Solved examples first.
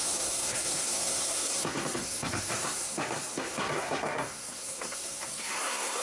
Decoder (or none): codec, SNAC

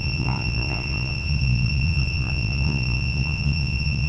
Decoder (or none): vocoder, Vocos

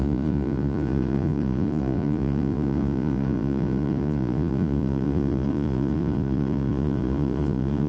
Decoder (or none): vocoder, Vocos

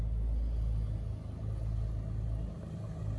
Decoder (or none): none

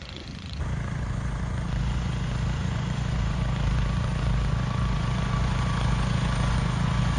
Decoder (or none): vocoder, Vocos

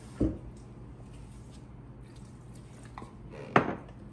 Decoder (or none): none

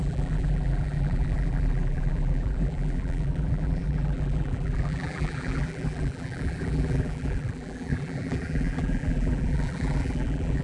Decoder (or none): vocoder, BigVGAN v2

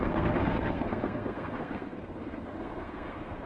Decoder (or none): codec, SNAC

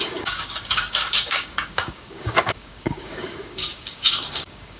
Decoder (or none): codec, DAC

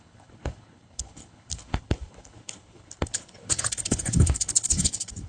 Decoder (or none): codec, HILCodec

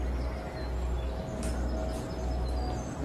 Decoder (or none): none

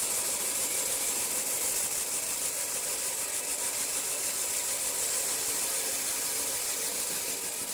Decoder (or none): none